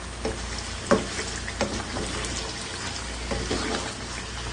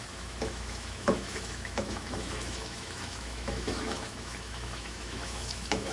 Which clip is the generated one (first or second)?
second